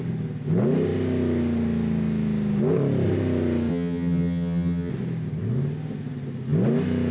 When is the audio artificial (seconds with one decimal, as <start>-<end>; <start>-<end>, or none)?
3.7-4.9